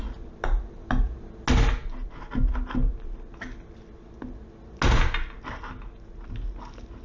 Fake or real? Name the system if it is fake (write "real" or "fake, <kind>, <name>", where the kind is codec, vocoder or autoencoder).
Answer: real